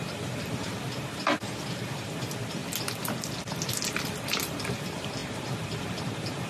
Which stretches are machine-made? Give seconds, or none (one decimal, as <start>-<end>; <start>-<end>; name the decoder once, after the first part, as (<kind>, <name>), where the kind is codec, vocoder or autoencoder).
0.0-2.6 (vocoder, BigVGAN v2); 4.2-6.5